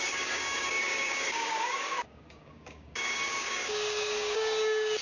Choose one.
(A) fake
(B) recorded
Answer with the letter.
A